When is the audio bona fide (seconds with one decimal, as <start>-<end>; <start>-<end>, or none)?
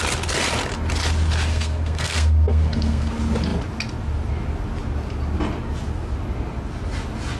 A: 0.0-1.5; 3.1-7.4